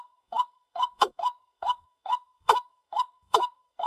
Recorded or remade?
remade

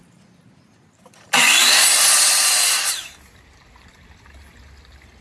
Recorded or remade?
remade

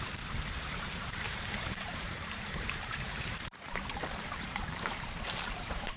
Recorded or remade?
remade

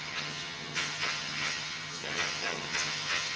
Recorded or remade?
remade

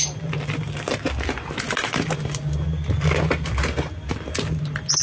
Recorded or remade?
recorded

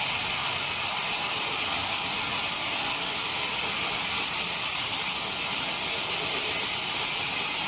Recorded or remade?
recorded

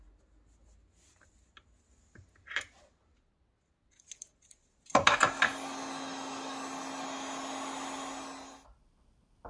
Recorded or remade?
recorded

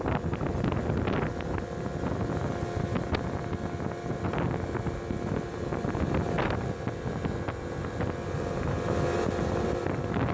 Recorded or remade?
recorded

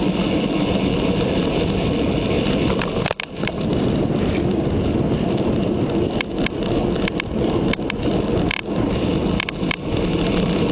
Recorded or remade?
recorded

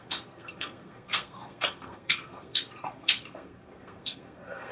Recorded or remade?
remade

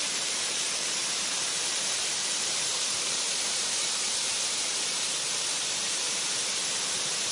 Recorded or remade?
remade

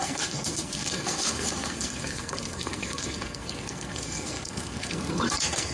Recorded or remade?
remade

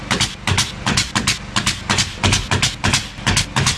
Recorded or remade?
recorded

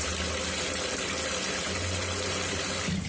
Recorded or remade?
recorded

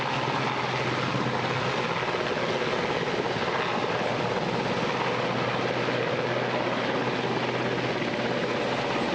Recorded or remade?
recorded